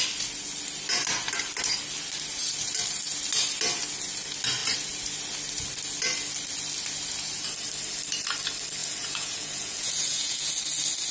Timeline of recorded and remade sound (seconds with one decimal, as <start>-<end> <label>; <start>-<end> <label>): 0.0-8.8 recorded; 8.8-10.5 remade; 10.5-11.1 recorded